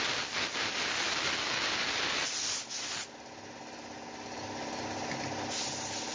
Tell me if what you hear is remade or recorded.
recorded